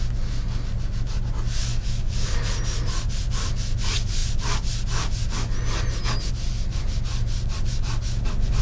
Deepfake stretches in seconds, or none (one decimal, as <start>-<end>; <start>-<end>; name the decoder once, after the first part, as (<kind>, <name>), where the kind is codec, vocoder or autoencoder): 1.7-2.5 (codec, DAC)